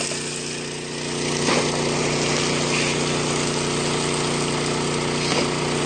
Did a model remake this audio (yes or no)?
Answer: no